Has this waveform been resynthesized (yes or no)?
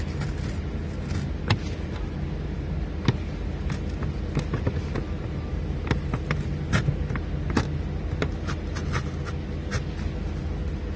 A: no